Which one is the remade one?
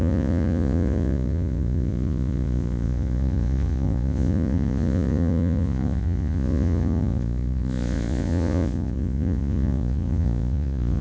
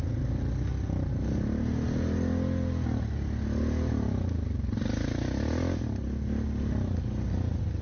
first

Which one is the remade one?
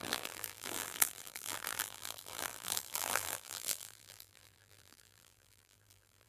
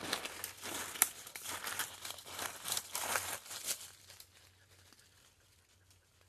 first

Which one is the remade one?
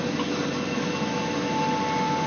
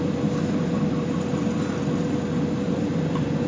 second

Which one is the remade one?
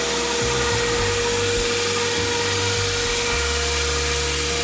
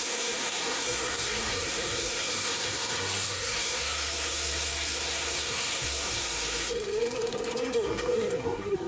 second